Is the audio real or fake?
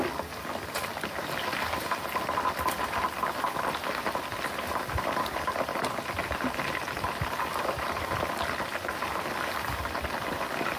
fake